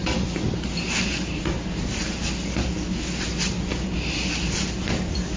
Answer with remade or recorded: recorded